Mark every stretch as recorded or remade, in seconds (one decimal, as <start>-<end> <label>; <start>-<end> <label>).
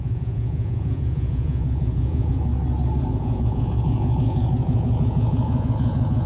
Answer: 0.0-2.5 remade; 2.5-3.1 recorded; 3.1-6.3 remade